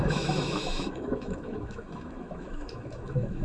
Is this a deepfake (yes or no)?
yes